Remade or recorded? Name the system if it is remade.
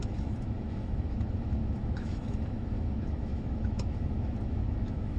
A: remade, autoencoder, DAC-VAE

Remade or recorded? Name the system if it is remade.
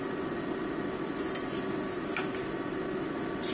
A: recorded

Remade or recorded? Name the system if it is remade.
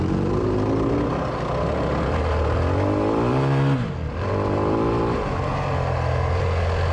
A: recorded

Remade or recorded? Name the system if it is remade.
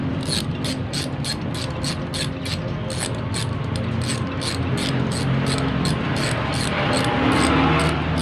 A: recorded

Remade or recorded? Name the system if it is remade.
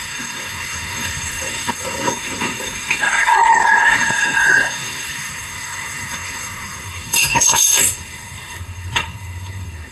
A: remade, codec, SNAC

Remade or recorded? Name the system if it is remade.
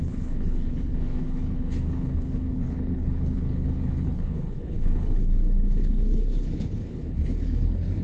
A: remade, codec, HILCodec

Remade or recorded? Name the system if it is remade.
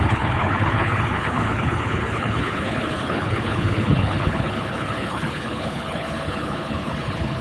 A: remade, codec, HILCodec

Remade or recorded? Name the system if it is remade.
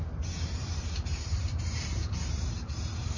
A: remade, vocoder, BigVGAN v2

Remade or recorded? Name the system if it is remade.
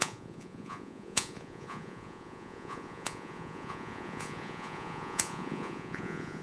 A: remade, vocoder, Vocos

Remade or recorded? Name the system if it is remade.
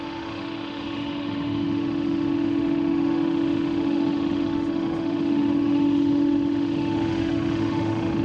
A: remade, autoencoder, DAC-VAE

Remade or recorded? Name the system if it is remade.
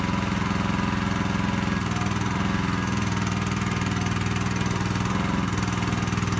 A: recorded